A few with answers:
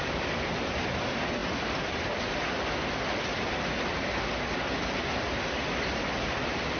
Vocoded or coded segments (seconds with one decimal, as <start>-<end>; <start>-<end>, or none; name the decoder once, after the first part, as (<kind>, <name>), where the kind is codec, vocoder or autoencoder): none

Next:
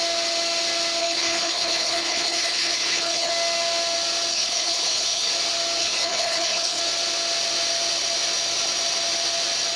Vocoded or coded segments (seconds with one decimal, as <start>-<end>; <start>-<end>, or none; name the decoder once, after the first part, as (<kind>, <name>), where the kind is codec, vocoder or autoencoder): 1.0-3.3 (codec, HILCodec); 4.3-5.3; 5.8-6.8

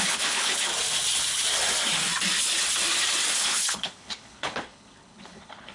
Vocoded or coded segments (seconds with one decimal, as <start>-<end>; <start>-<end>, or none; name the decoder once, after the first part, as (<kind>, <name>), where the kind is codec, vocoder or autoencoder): 0.0-0.7 (codec, HILCodec); 3.3-5.7

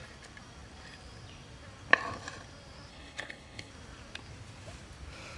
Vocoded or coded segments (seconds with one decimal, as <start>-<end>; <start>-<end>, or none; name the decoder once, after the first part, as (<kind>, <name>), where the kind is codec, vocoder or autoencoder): 2.9-3.7 (codec, HILCodec)

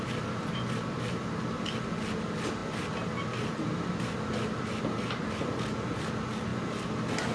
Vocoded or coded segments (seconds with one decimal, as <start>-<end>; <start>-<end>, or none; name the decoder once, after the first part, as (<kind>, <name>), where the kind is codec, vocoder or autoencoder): none

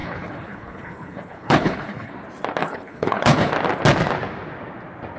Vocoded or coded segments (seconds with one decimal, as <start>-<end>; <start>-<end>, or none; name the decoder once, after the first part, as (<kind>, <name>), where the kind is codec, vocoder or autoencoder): 0.0-2.1 (codec, HILCodec); 2.6-3.5

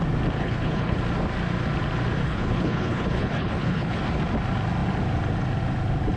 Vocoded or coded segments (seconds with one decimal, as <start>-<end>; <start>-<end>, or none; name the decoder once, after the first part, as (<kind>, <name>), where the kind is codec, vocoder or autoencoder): 0.4-1.0 (codec, HILCodec); 2.2-4.0